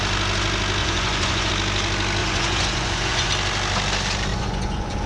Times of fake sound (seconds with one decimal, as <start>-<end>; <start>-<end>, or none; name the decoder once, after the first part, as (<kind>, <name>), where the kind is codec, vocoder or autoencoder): 0.8-1.5 (vocoder, Vocos); 2.2-3.3; 4.3-5.1